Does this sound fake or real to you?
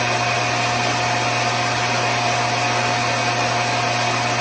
real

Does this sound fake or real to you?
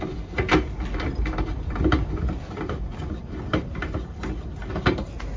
real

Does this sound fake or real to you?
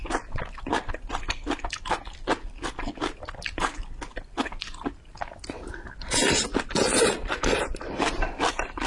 real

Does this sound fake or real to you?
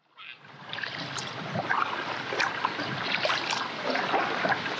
real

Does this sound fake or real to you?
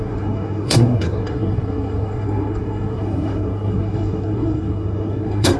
fake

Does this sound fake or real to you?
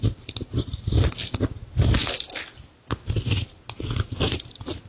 real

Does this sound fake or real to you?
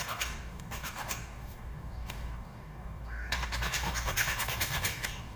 fake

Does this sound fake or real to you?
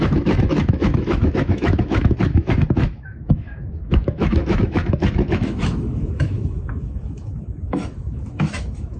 fake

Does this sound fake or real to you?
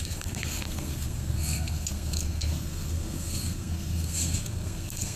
fake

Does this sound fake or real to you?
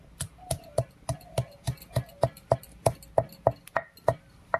real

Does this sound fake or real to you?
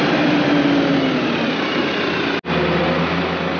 real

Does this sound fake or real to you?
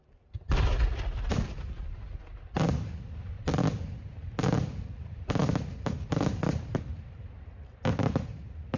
real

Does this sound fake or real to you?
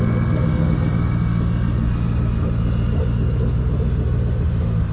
real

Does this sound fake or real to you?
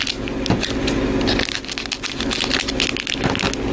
real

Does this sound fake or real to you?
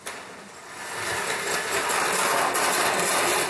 real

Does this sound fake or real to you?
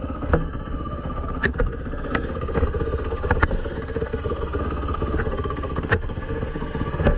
fake